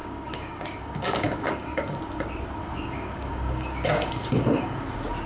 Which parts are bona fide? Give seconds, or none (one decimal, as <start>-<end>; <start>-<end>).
2.0-2.6; 4.8-5.3